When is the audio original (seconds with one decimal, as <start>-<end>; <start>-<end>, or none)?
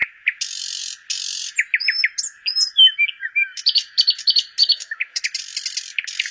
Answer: 0.0-4.6; 5.2-6.3